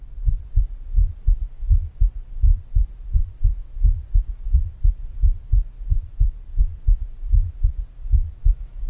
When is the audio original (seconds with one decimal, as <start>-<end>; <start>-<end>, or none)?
0.0-8.4